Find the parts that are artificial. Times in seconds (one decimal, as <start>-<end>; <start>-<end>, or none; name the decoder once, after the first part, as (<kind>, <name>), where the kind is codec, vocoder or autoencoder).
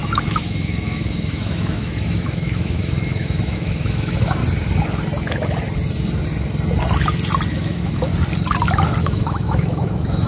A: 0.0-4.4 (autoencoder, DAC-VAE); 7.5-8.1; 9.0-10.3